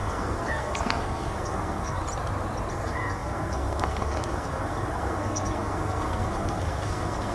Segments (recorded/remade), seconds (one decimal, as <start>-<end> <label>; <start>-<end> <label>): 0.0-2.0 remade; 2.0-2.7 recorded; 2.7-7.3 remade